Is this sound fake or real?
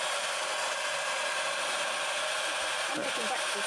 real